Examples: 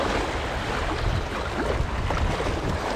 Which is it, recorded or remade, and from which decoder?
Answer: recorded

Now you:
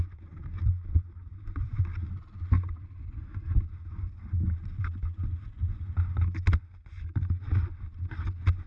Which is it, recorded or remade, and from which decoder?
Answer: recorded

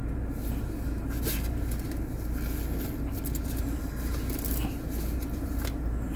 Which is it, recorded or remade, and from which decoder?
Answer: recorded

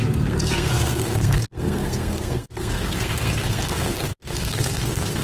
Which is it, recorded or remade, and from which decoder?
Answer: remade, codec, SNAC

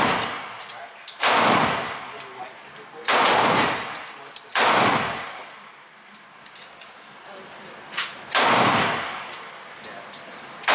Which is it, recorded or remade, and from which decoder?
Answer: recorded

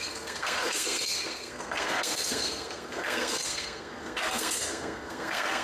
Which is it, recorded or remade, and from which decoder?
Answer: remade, codec, SNAC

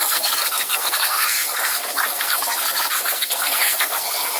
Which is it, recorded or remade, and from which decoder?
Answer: remade, codec, SNAC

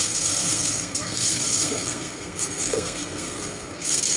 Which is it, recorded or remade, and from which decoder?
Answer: remade, codec, SNAC